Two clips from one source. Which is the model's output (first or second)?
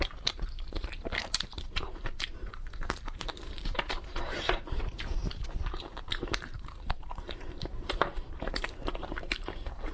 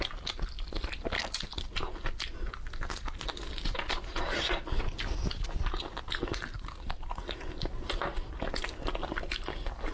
first